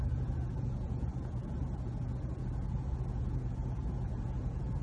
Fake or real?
fake